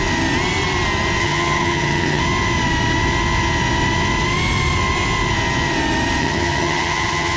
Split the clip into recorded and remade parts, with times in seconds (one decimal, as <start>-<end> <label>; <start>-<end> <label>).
0.0-1.2 recorded; 1.2-2.2 remade; 2.2-6.2 recorded; 6.2-7.4 remade